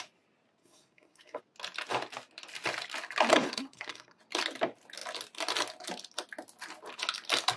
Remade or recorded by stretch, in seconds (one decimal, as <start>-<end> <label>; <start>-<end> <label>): 0.0-0.6 recorded; 0.6-1.4 remade; 1.4-3.3 recorded; 3.3-4.2 remade; 4.2-7.6 recorded